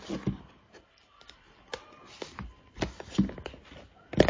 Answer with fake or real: real